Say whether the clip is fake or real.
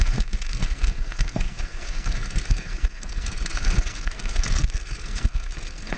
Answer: fake